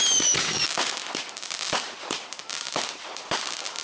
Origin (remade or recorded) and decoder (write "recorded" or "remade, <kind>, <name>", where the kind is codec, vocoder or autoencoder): remade, vocoder, BigVGAN v2